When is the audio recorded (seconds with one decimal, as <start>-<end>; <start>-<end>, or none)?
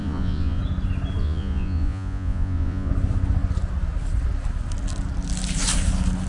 0.6-1.2; 2.9-6.3